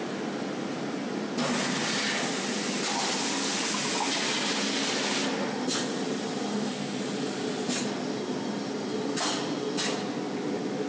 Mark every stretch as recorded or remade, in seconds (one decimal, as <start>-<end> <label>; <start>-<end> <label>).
0.0-6.5 recorded; 6.5-7.0 remade; 7.0-10.9 recorded